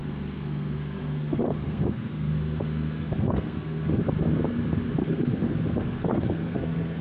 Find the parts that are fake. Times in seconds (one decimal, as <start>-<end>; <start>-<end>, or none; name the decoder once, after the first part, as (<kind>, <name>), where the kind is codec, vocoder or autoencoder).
0.0-4.0 (codec, SNAC); 5.0-7.0